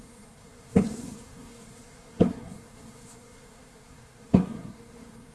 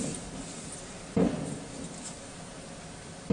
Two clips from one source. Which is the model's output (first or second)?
first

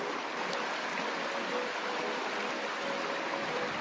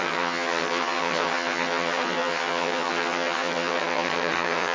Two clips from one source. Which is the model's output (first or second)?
second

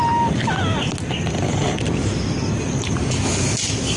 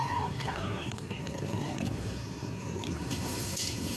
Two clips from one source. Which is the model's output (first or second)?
second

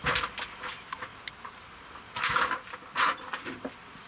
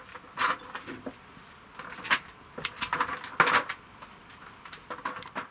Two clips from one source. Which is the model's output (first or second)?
first